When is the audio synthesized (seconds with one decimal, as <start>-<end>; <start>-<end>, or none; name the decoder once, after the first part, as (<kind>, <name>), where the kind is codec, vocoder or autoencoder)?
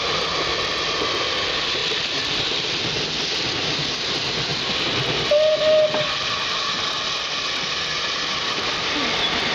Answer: 1.8-2.7 (vocoder, BigVGAN v2)